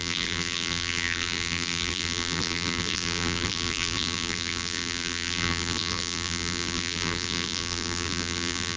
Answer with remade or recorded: remade